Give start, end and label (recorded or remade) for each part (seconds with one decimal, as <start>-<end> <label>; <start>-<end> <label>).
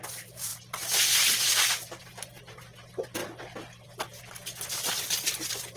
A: 0.0-5.8 recorded